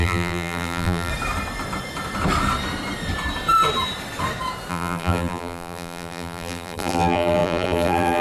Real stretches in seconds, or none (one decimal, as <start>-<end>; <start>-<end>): 1.1-4.7